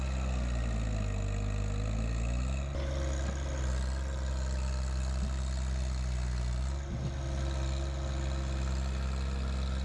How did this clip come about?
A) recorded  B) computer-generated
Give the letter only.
A